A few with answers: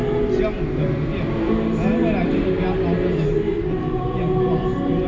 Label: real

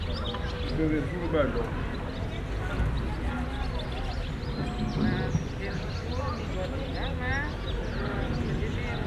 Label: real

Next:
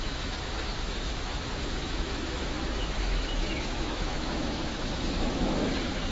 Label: fake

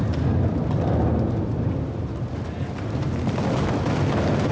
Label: real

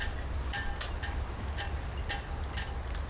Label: real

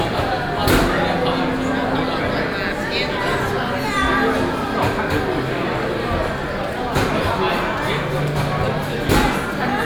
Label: real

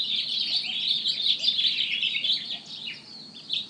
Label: real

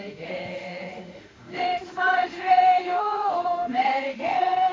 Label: fake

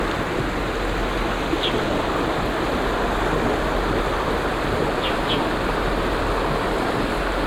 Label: real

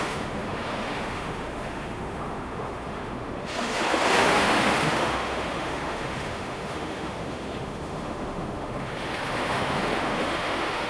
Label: fake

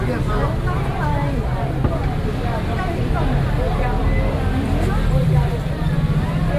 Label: real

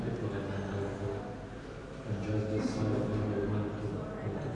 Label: real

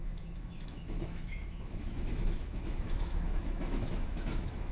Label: fake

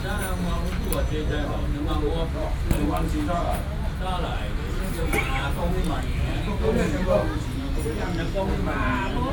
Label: real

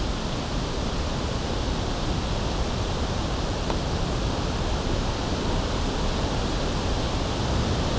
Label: real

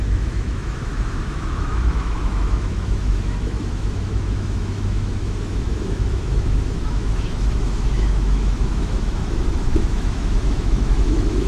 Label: fake